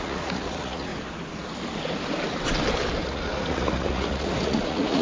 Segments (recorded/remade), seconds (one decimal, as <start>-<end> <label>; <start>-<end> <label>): 0.0-0.9 remade; 0.9-3.0 recorded; 3.0-5.0 remade